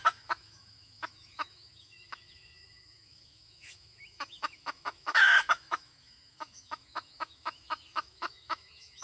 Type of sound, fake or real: fake